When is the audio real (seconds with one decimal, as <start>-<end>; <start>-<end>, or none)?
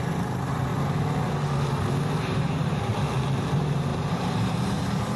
0.7-2.2; 2.9-3.5